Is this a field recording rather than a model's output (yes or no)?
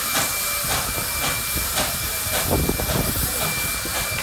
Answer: yes